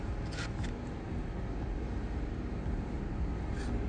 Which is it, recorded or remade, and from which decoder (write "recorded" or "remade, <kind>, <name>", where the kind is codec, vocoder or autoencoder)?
recorded